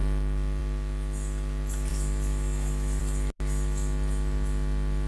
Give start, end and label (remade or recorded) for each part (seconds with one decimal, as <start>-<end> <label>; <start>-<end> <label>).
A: 0.0-1.9 recorded; 1.9-3.0 remade; 3.0-5.1 recorded